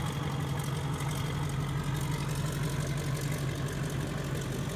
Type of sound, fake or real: real